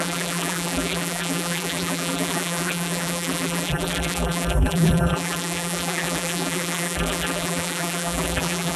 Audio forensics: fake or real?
fake